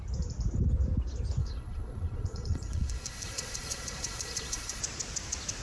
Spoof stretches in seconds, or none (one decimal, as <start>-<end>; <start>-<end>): 1.4-4.8